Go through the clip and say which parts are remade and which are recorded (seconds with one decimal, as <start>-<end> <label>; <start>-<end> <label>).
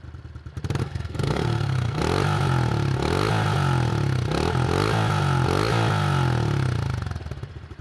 0.0-0.8 recorded; 0.8-2.0 remade; 2.0-7.8 recorded